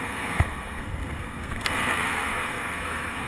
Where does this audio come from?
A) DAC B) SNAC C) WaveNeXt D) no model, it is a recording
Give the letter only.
B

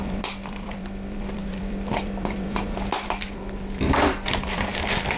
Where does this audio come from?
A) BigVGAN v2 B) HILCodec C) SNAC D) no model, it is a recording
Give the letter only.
A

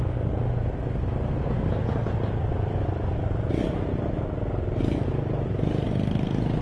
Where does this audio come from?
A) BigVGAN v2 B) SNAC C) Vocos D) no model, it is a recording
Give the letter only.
D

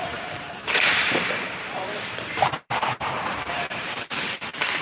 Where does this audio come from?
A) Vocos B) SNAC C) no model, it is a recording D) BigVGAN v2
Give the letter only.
D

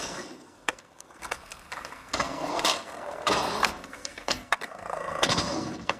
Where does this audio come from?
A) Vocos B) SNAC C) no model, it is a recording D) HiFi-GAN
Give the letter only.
B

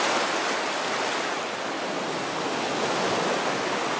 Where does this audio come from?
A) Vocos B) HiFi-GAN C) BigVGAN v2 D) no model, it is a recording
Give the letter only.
D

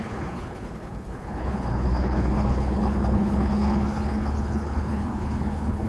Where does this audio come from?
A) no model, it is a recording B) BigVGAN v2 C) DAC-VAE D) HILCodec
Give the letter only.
D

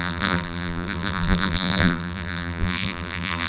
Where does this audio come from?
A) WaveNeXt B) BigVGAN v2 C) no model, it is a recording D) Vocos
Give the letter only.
B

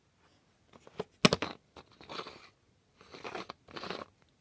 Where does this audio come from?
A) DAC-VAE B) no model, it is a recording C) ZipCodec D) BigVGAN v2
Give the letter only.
B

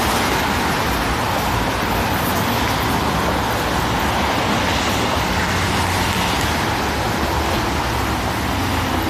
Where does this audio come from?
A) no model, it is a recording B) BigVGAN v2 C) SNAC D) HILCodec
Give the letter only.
A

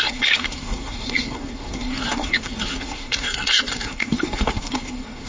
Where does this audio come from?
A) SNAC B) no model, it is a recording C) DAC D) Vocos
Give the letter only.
A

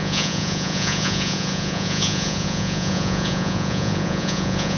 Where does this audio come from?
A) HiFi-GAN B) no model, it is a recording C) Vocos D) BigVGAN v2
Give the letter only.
C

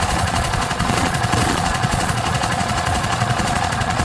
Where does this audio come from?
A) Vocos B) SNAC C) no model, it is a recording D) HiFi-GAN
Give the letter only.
A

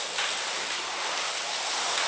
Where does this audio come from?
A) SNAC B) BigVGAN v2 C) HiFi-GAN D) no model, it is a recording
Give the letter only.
B